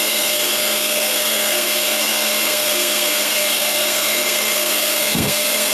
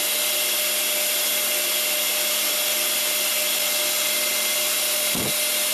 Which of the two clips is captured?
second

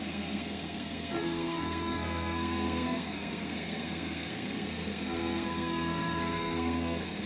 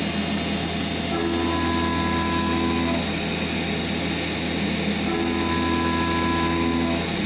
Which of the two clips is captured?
second